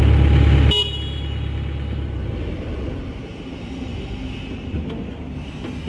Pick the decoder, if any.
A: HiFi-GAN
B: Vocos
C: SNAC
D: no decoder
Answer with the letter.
D